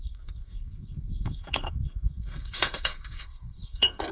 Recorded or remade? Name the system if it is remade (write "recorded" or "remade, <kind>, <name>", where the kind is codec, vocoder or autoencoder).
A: remade, codec, SNAC